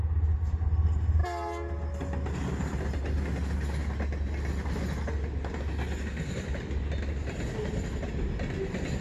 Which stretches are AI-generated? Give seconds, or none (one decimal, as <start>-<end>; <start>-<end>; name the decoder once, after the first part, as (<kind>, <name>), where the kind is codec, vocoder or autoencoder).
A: none